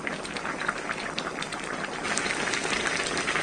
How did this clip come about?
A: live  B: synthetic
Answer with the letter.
A